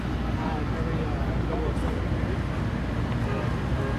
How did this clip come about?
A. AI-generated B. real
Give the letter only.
B